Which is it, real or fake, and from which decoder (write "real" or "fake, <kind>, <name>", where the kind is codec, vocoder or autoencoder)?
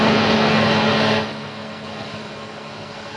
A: fake, codec, SNAC